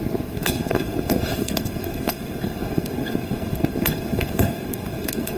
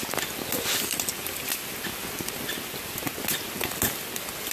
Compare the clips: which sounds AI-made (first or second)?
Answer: first